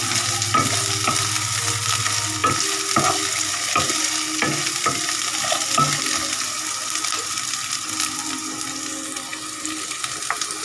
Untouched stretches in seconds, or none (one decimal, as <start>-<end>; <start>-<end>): 0.0-10.6